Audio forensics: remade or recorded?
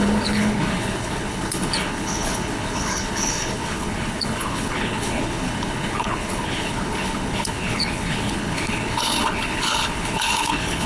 remade